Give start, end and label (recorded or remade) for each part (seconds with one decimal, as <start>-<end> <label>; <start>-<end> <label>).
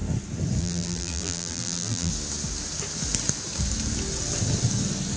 0.0-0.6 recorded; 0.6-2.1 remade; 2.1-5.2 recorded